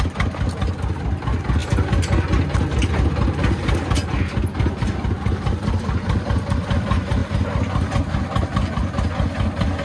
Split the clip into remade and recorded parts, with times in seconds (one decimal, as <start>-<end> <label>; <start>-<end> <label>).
0.0-9.8 recorded